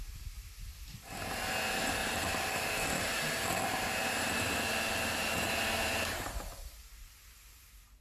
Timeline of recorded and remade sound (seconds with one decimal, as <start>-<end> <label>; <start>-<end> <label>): 0.0-2.0 recorded; 2.0-6.3 remade; 6.3-8.0 recorded